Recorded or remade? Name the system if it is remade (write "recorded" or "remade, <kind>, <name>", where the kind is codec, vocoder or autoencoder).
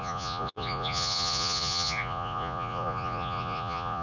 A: remade, vocoder, Vocos